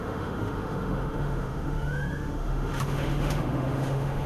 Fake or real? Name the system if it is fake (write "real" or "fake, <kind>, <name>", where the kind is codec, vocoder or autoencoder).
fake, autoencoder, DAC-VAE